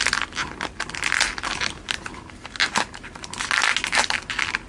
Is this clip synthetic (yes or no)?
no